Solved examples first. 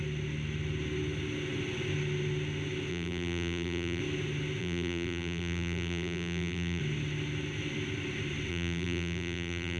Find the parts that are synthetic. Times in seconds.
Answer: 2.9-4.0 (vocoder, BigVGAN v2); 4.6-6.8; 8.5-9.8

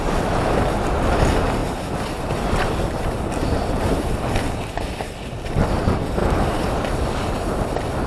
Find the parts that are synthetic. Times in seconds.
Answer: none

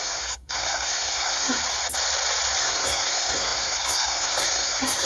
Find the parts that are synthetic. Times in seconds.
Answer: 0.0-1.6 (codec, SNAC); 2.6-5.1